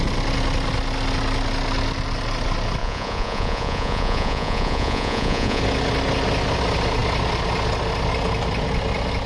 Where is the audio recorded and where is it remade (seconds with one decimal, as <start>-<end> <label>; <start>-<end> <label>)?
0.0-2.8 recorded; 2.8-5.6 remade; 5.6-9.3 recorded